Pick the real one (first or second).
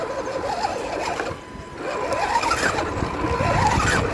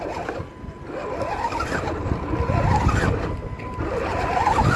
first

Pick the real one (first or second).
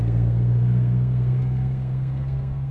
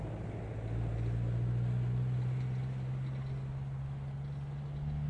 second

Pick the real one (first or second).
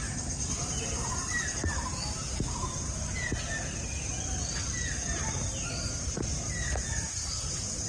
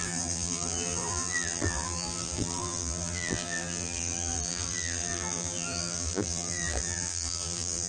first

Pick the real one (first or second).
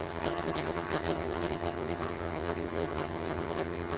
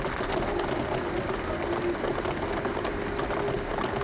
second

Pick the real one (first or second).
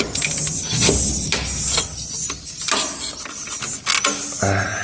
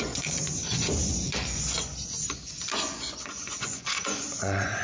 first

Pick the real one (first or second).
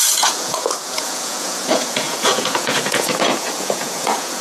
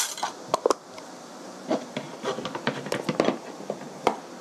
second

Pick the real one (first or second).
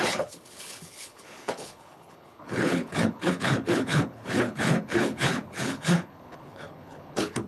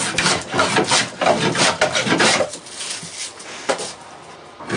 second